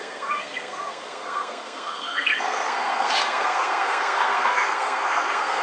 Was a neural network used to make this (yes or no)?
yes